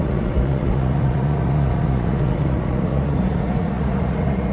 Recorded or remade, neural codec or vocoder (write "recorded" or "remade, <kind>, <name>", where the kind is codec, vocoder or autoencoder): remade, vocoder, Vocos